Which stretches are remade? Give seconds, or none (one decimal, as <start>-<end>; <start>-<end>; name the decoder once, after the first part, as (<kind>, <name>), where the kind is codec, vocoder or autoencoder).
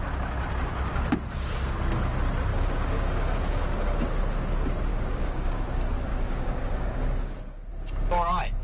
2.5-4.0 (codec, DAC); 4.9-5.5; 6.1-7.7